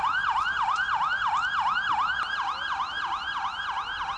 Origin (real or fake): real